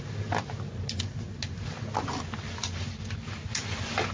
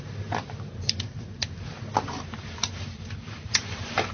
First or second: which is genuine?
first